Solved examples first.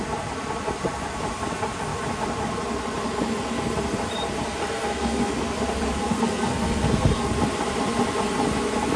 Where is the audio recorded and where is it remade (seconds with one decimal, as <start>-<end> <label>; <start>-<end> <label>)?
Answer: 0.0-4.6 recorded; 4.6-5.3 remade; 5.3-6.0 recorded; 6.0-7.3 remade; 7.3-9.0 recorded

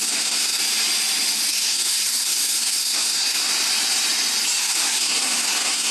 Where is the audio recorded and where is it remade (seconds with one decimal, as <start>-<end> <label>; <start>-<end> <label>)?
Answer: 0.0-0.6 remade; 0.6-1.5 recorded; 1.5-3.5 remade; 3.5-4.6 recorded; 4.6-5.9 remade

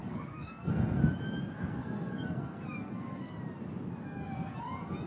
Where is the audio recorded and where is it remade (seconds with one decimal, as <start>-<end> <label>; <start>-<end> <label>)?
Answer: 0.0-1.0 remade; 1.0-1.5 recorded; 1.5-3.3 remade; 3.3-4.0 recorded; 4.0-5.1 remade

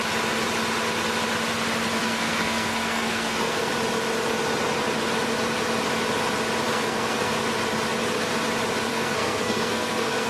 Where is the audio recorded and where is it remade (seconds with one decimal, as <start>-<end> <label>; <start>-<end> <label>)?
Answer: 0.0-2.0 recorded; 2.0-3.7 remade; 3.7-6.7 recorded; 6.7-7.3 remade; 7.3-8.9 recorded; 8.9-10.3 remade